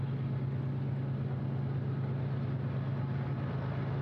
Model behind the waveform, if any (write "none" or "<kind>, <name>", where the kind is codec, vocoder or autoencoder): none